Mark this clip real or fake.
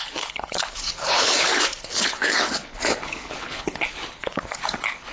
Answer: fake